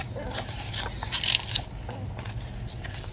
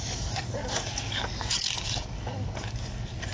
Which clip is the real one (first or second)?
first